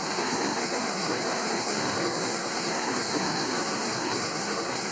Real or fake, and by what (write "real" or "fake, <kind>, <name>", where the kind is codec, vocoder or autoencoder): fake, codec, SNAC